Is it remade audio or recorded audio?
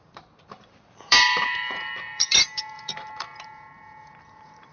remade